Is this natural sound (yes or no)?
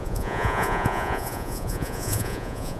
no